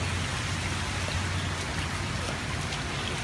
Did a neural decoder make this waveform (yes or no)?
no